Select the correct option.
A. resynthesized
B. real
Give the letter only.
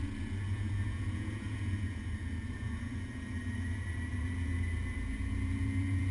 A